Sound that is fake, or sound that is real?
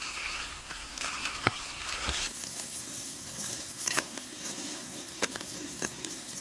fake